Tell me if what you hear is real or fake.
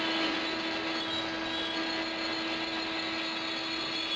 real